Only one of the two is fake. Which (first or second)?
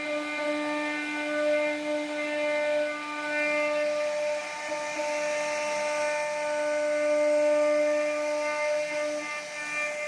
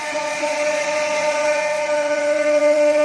second